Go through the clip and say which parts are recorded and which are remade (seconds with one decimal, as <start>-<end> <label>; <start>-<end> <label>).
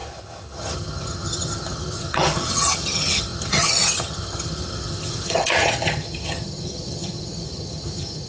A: 0.0-8.3 remade